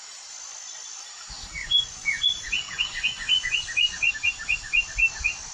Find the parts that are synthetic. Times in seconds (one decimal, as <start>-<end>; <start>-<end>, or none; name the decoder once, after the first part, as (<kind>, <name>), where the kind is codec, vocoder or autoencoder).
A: 1.6-4.1 (vocoder, Vocos)